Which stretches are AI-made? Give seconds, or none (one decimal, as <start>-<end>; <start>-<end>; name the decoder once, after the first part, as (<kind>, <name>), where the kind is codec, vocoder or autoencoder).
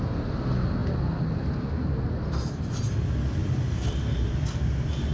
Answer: none